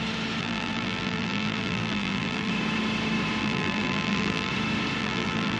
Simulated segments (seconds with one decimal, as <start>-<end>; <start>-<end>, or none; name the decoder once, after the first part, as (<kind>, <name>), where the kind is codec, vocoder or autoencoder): 0.4-2.5 (vocoder, BigVGAN v2); 3.4-4.5; 5.0-5.6